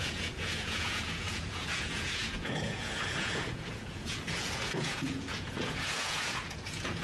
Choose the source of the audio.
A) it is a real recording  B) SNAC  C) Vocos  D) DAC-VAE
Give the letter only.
C